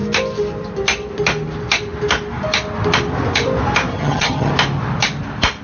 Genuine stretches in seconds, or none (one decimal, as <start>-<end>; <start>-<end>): 0.0-3.9; 4.5-5.6